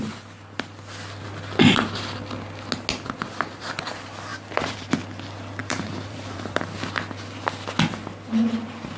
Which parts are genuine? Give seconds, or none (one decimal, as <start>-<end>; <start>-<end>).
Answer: 0.0-4.3; 5.0-5.6; 6.6-9.0